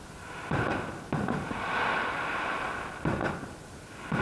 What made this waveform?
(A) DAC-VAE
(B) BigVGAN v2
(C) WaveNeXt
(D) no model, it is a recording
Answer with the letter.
D